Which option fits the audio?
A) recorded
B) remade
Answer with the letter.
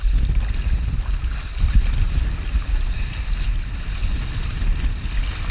A